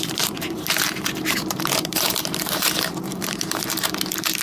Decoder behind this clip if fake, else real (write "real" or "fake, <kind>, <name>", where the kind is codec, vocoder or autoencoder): fake, vocoder, BigVGAN v2